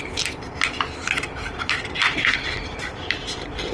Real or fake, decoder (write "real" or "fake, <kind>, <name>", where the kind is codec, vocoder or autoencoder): real